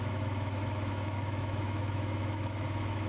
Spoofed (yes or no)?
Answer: yes